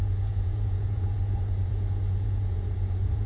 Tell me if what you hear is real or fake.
fake